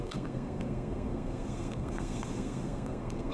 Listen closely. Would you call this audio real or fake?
fake